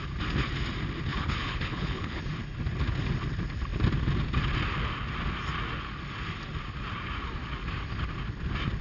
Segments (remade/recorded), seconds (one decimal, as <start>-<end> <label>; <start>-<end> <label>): 0.0-1.1 recorded; 1.1-2.2 remade; 2.2-8.8 recorded